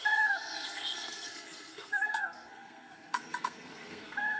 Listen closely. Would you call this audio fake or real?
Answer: fake